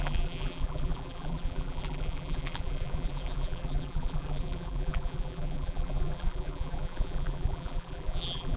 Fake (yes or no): yes